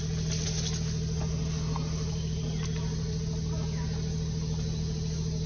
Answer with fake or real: real